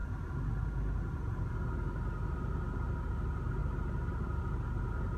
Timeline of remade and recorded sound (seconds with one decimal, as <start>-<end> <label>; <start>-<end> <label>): 0.0-5.2 recorded